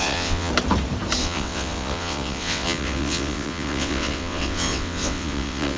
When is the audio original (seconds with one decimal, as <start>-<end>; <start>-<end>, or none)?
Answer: 0.5-1.2

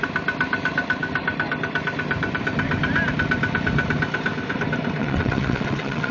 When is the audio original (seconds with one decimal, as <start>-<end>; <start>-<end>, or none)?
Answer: 0.0-5.0

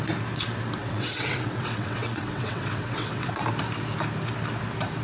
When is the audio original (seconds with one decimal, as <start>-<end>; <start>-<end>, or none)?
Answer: 0.0-0.8; 3.4-5.0

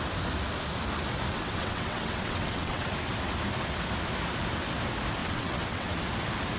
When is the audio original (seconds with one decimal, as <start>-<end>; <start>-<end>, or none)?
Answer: 0.0-1.3; 2.9-5.2; 6.0-6.6

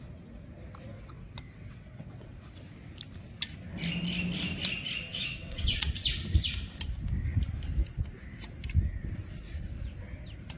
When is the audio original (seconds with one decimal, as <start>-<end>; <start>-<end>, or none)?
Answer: 0.0-0.9; 2.4-5.1; 5.9-10.6

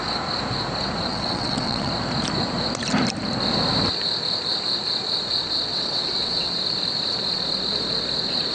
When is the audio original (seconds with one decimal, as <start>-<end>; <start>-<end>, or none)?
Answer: 0.0-1.1; 1.9-5.7; 6.5-8.5

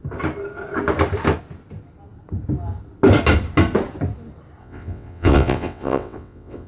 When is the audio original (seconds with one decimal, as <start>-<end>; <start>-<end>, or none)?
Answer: 0.0-4.6